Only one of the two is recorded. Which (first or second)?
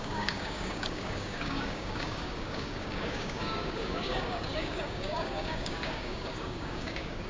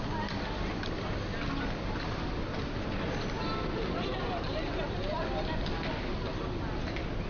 second